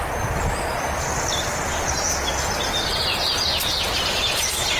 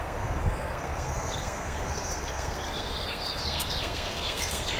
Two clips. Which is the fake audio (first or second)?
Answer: second